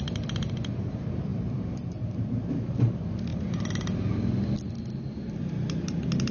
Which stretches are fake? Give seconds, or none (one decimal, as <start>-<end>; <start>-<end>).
1.3-2.6